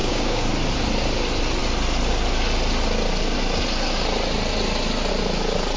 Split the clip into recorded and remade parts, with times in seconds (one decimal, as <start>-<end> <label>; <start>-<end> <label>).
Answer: 0.0-0.5 remade; 0.5-5.8 recorded